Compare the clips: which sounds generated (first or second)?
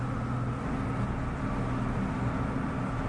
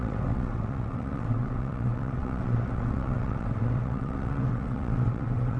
second